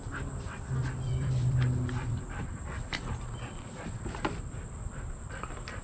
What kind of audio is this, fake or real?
fake